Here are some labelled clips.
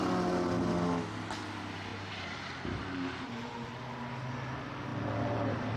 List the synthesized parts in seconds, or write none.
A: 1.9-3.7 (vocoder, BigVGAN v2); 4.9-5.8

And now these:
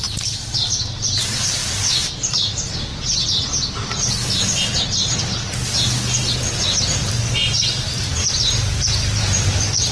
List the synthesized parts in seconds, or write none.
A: 0.0-1.6 (vocoder, BigVGAN v2); 2.3-2.9; 6.8-9.9

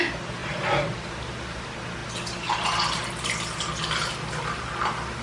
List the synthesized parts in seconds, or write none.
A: 0.4-1.1 (vocoder, BigVGAN v2); 2.0-5.2

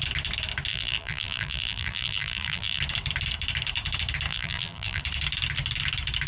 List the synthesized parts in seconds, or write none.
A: 0.7-2.8 (vocoder, BigVGAN v2); 4.3-5.0

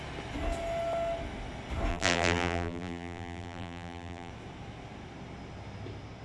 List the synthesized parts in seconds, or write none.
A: 1.9-4.3 (vocoder, BigVGAN v2)

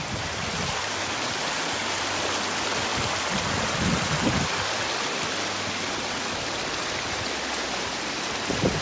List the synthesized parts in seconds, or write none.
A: none

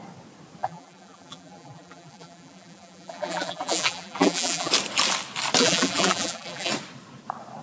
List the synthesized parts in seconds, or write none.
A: 0.6-4.7 (vocoder, BigVGAN v2); 5.6-6.7